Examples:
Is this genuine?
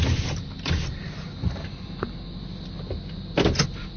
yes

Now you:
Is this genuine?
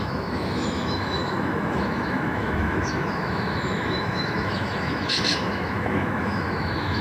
no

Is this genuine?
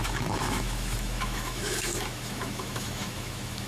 no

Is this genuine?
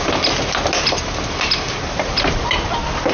yes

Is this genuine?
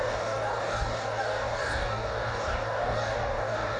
no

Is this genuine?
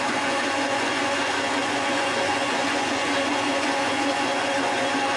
no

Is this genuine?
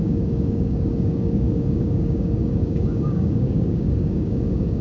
no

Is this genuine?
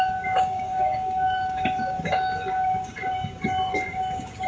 no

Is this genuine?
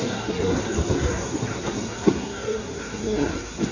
no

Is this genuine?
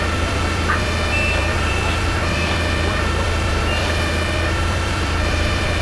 no